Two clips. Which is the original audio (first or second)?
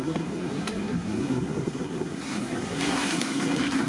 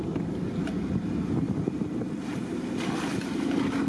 second